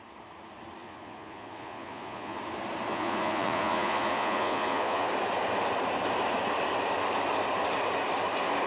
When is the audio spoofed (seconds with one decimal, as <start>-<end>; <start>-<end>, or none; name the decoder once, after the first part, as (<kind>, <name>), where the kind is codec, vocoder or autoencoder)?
0.8-2.4 (vocoder, Vocos); 2.9-5.1